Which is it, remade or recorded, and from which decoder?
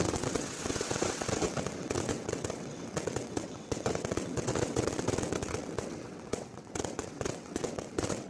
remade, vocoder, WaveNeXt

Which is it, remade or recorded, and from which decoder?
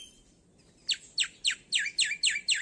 recorded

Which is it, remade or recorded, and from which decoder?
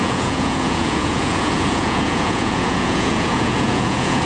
remade, vocoder, Vocos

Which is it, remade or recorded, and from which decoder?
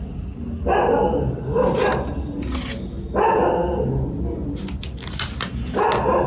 recorded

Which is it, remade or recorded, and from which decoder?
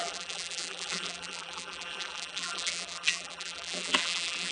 remade, vocoder, BigVGAN v2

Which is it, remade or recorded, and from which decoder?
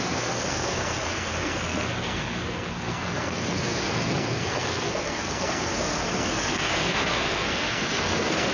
remade, codec, SNAC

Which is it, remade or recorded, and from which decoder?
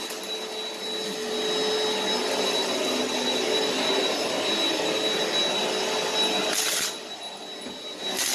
recorded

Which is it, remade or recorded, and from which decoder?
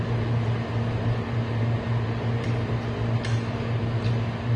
recorded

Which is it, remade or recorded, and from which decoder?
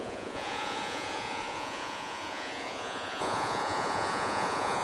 remade, vocoder, Vocos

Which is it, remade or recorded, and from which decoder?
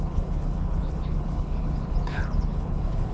remade, codec, HILCodec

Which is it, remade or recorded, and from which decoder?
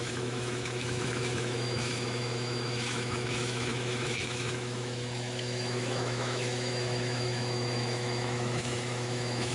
remade, autoencoder, DAC-VAE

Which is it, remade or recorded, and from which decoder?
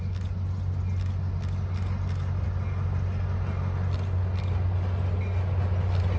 recorded